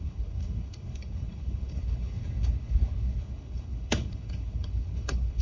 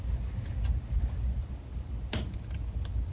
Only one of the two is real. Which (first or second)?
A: second